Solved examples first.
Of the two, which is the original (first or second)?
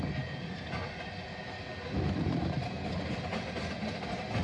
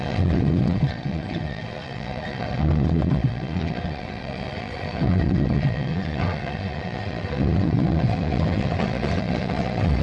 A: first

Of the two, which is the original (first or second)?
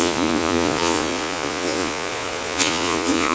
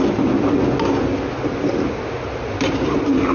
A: second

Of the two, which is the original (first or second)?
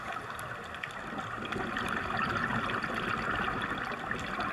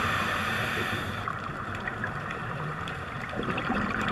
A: first